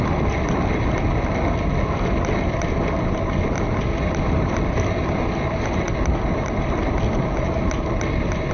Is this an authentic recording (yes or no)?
yes